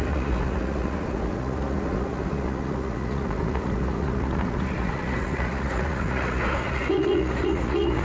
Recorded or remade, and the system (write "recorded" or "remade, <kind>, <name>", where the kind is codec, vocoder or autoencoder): remade, vocoder, Vocos